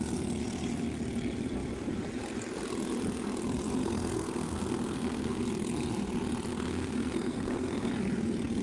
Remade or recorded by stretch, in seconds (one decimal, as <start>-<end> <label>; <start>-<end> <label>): 0.0-3.8 recorded; 3.8-5.4 remade; 5.4-6.5 recorded; 6.5-7.9 remade; 7.9-8.6 recorded